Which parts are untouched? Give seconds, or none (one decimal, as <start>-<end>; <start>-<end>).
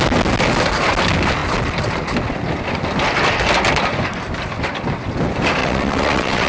0.0-5.6